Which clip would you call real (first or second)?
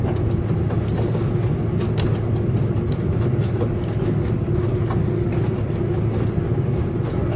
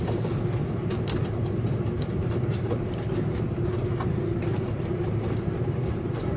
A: first